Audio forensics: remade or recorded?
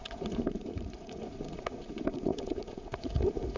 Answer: remade